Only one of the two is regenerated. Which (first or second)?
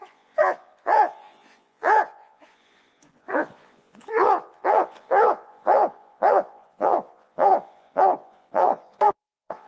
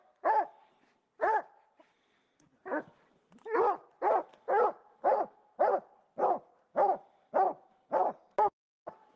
first